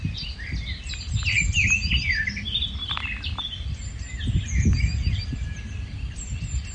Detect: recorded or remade remade